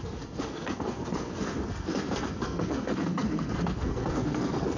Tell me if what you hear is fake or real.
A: fake